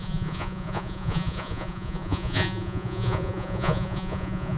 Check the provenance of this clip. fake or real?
fake